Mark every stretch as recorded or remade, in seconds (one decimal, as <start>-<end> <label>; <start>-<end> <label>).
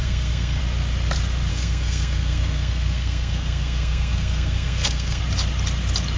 0.0-0.6 remade; 0.6-1.5 recorded; 1.5-5.2 remade; 5.2-6.2 recorded